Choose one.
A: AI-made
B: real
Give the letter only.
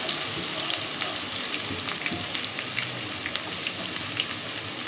B